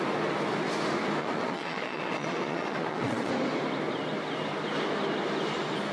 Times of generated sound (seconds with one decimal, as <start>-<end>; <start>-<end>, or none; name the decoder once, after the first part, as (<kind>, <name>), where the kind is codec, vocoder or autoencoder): 1.2-3.3 (vocoder, Vocos)